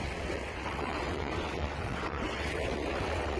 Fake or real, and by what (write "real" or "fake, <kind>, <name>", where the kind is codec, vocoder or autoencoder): fake, vocoder, WaveNeXt